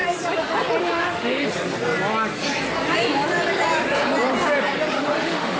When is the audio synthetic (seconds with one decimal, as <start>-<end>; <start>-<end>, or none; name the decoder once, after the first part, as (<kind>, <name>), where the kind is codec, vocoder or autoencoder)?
0.8-1.5 (autoencoder, DAC-VAE); 4.9-5.6